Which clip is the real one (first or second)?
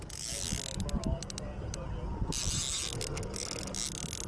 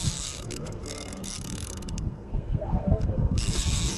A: first